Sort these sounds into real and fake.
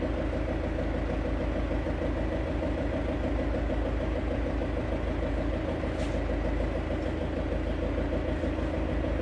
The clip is real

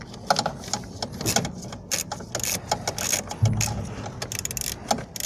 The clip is real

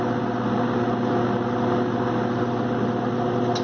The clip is real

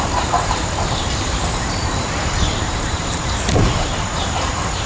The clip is fake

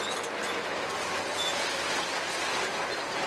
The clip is real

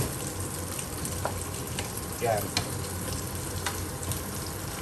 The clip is real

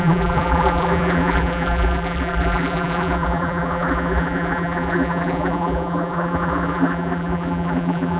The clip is fake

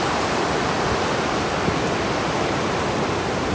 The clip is real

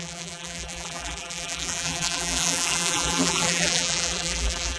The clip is fake